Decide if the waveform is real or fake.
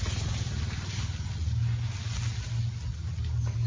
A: real